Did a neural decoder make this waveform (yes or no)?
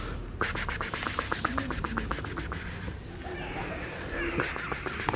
no